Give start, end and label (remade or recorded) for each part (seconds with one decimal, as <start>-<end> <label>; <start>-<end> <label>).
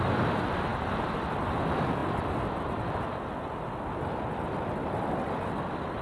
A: 0.0-6.0 recorded